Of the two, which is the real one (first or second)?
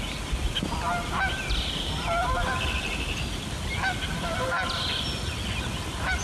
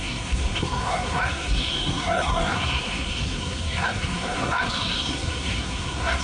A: first